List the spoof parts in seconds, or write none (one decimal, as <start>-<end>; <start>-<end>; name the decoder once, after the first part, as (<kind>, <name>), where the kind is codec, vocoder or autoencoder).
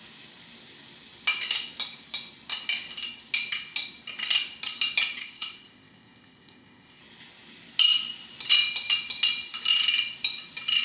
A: 5.2-7.0 (codec, ZipCodec)